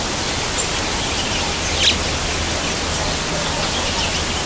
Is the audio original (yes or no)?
yes